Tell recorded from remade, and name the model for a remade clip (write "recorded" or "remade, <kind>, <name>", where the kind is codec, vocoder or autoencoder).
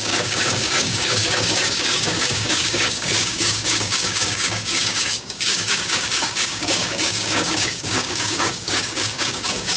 remade, codec, DAC